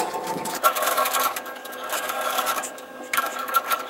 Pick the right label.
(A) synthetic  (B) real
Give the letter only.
A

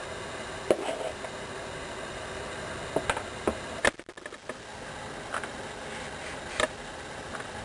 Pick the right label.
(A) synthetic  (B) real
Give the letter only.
B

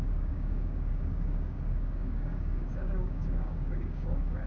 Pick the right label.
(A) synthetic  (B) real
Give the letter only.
A